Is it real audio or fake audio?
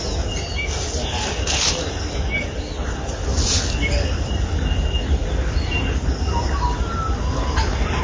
real